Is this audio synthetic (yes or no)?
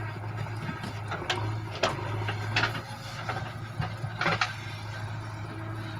no